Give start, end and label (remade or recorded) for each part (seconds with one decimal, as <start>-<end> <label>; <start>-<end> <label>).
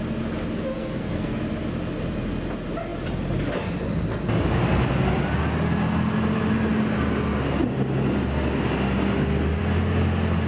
0.0-0.7 recorded; 0.7-1.4 remade; 1.4-10.5 recorded